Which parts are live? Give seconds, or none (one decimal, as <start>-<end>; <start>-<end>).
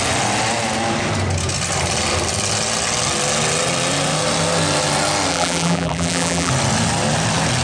0.0-5.3; 6.5-7.6